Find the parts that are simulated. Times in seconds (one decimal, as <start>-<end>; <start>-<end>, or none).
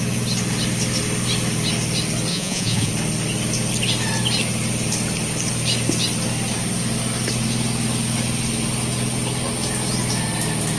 2.3-2.9